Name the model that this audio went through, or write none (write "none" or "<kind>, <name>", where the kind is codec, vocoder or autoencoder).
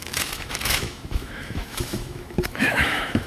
autoencoder, DAC-VAE